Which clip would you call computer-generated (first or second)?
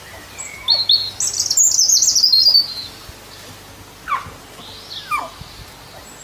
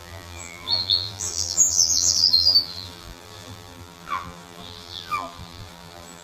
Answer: second